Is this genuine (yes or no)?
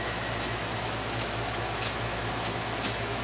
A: no